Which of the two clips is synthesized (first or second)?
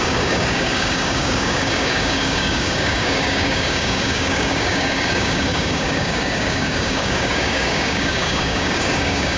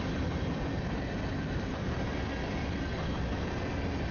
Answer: first